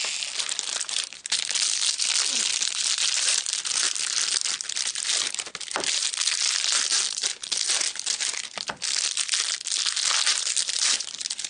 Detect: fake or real real